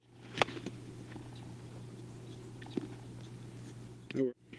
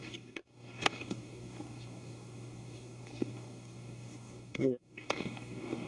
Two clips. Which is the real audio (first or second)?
first